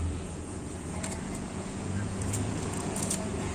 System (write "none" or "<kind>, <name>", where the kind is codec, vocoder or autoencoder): vocoder, Vocos